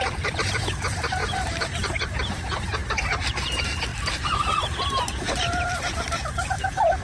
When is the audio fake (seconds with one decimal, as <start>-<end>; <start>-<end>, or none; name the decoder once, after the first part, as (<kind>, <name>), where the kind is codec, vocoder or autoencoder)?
0.0-7.0 (vocoder, BigVGAN v2)